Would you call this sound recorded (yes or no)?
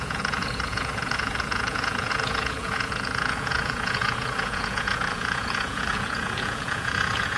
no